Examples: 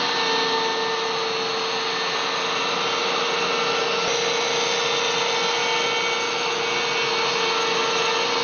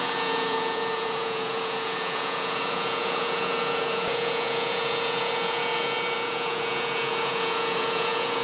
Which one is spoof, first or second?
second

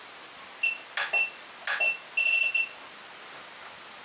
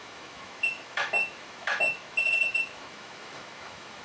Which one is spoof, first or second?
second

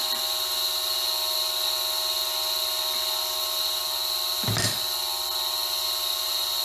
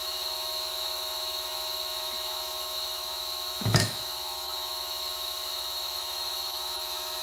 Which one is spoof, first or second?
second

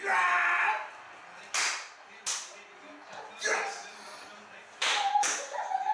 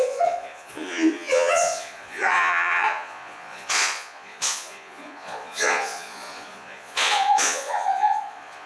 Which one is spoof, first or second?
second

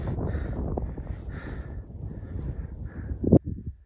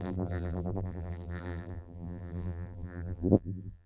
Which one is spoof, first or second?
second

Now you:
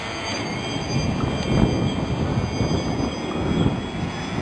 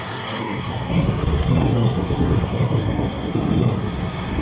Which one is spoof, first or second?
second